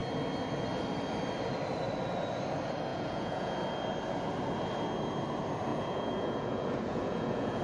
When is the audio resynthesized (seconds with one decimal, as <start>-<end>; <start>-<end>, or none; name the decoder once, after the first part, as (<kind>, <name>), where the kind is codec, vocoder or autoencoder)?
2.9-3.5 (vocoder, Vocos); 5.7-7.6